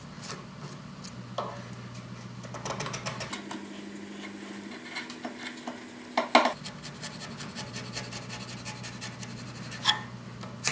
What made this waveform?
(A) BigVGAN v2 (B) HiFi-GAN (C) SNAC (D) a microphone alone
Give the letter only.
D